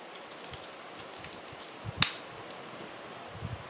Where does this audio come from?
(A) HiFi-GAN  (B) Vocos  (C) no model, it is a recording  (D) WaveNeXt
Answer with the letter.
C